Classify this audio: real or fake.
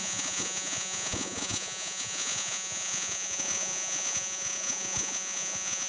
fake